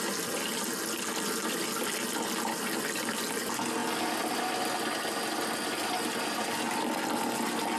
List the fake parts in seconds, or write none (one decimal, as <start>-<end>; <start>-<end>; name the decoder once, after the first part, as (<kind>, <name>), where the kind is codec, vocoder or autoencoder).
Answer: 3.8-4.6 (vocoder, BigVGAN v2)